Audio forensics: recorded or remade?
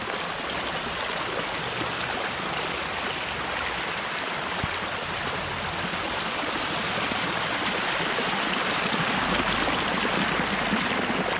recorded